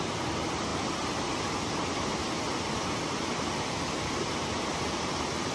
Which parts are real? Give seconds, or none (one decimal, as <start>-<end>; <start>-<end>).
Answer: 0.0-5.5